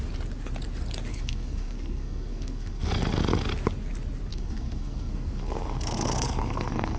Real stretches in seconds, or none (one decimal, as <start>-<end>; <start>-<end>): 0.0-1.1; 2.9-4.3

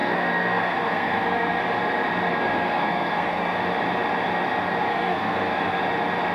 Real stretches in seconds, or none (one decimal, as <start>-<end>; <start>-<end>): 1.6-2.3; 3.6-4.9; 5.8-6.3

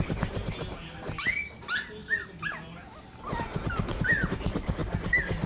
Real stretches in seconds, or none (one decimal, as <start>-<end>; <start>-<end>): 0.0-5.5

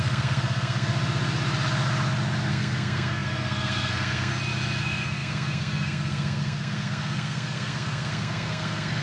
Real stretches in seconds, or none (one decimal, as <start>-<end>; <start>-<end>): 0.9-2.5; 4.3-4.8

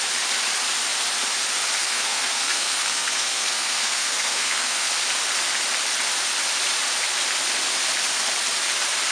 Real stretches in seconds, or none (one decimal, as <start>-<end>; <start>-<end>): 0.0-1.8; 4.9-9.1